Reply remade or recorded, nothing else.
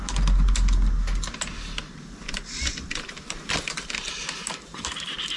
recorded